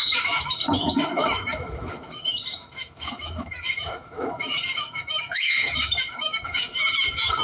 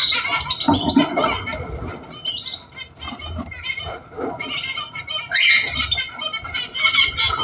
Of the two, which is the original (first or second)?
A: second